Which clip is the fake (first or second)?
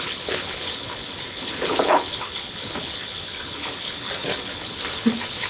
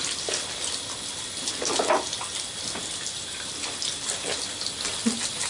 first